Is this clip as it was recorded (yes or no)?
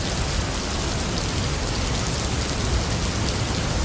yes